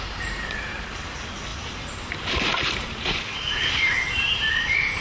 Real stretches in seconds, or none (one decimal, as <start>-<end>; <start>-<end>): none